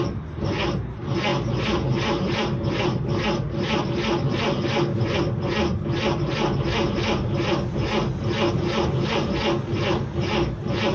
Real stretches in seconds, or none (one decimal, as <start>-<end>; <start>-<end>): 0.0-10.9